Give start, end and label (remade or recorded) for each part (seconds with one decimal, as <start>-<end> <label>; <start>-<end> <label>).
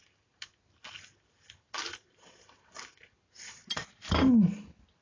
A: 0.0-5.0 recorded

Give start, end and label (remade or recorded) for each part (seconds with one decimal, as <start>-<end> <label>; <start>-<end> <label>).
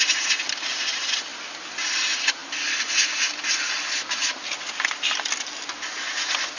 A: 0.0-6.6 recorded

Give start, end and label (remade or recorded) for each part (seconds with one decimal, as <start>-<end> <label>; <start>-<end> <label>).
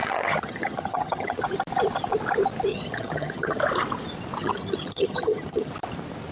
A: 0.0-1.4 remade; 1.4-2.7 recorded; 2.7-3.6 remade; 3.6-4.4 recorded; 4.4-5.7 remade; 5.7-6.3 recorded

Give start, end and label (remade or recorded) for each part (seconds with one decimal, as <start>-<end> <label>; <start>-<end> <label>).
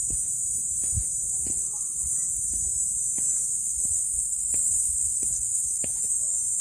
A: 0.0-1.5 recorded; 1.5-2.1 remade; 2.1-3.6 recorded; 3.6-5.8 remade; 5.8-6.6 recorded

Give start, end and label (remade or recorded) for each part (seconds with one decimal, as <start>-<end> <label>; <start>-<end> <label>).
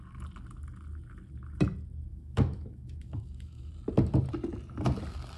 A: 0.0-2.1 recorded; 2.1-3.7 remade; 3.7-5.4 recorded